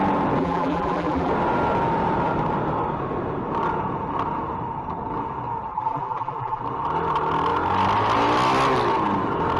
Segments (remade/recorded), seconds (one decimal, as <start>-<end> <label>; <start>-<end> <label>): 0.0-0.4 recorded; 0.4-1.3 remade; 1.3-5.7 recorded; 5.7-6.6 remade; 6.6-9.6 recorded